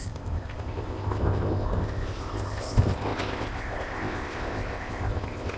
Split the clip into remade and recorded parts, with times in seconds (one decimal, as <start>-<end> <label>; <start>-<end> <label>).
0.0-5.6 remade